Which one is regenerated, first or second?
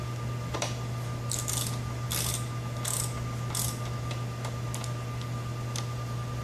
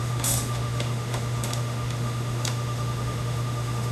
second